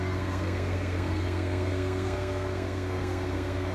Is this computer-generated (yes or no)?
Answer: yes